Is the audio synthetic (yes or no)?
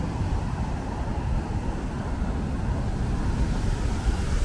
no